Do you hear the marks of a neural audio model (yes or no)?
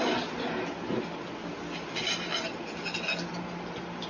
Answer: no